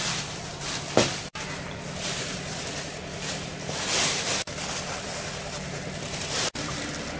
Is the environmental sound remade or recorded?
remade